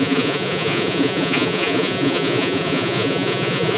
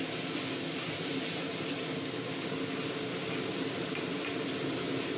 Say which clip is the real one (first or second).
second